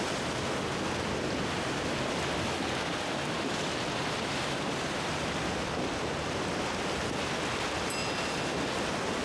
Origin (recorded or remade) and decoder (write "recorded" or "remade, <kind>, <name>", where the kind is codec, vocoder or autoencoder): recorded